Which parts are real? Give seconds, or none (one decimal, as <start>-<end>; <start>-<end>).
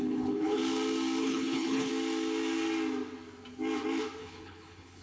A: 0.6-1.2; 1.9-4.2